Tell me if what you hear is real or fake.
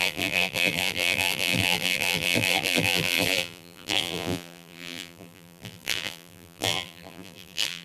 fake